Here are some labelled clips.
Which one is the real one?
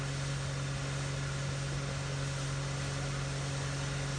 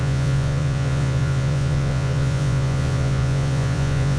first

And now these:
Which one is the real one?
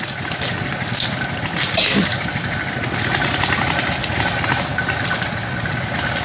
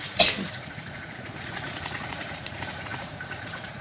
first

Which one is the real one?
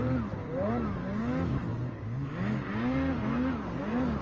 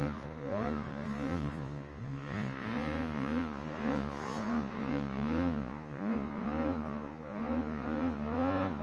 first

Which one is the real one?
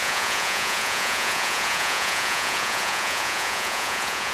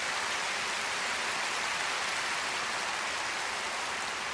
second